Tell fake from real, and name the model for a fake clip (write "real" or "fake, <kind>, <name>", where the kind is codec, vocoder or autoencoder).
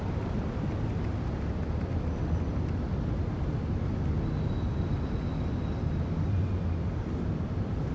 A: real